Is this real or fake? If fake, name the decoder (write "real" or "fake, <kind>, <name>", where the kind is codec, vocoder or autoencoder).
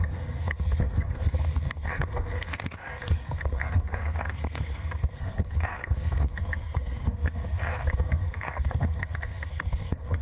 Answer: fake, codec, SNAC